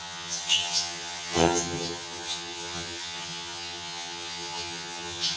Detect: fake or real fake